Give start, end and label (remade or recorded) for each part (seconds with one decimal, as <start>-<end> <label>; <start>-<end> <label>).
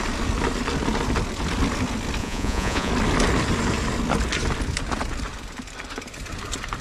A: 0.0-2.2 recorded; 2.2-2.9 remade; 2.9-6.8 recorded